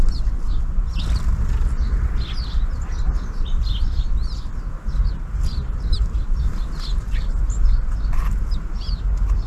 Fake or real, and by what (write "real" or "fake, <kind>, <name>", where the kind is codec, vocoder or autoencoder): real